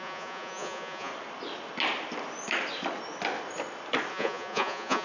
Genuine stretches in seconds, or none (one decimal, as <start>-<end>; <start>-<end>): 1.1-4.1